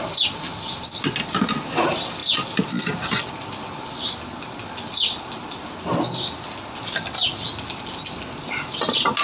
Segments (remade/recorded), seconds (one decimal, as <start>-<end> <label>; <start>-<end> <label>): 0.0-9.2 recorded